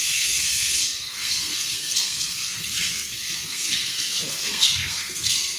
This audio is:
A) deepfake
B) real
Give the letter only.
A